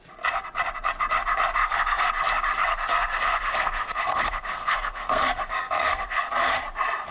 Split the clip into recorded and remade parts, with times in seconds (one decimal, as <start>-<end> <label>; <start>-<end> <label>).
0.0-1.6 recorded; 1.6-2.1 remade; 2.1-2.7 recorded; 2.7-6.3 remade; 6.3-7.1 recorded